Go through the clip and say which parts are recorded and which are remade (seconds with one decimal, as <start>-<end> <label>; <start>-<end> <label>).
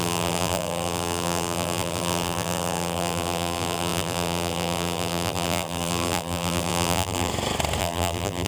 0.0-7.3 remade; 7.3-7.8 recorded; 7.8-8.5 remade